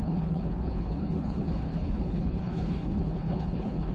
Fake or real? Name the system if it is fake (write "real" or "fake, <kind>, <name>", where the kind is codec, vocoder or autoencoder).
fake, codec, HILCodec